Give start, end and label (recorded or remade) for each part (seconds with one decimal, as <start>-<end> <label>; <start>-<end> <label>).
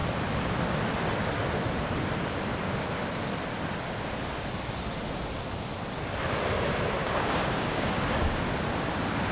0.0-7.0 recorded; 7.0-8.4 remade; 8.4-9.3 recorded